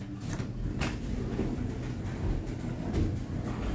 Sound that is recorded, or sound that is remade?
recorded